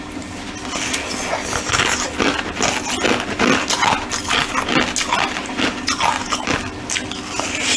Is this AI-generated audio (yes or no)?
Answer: no